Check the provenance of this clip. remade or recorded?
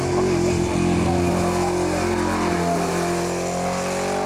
recorded